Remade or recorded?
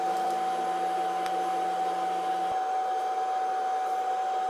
recorded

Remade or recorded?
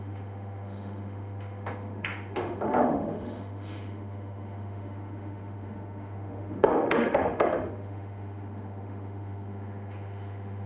remade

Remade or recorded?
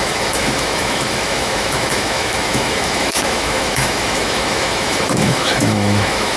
remade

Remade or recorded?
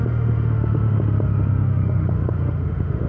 remade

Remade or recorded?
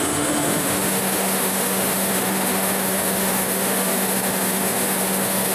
remade